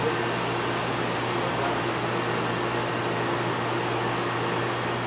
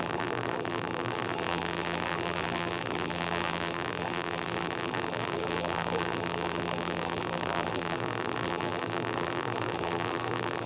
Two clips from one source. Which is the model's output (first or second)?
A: second